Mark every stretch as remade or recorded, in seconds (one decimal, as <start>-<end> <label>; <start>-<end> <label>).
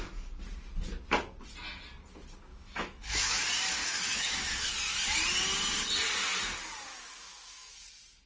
0.0-2.5 recorded; 2.5-3.4 remade; 3.4-3.8 recorded; 3.8-4.7 remade; 4.7-6.9 recorded; 6.9-7.8 remade; 7.8-8.3 recorded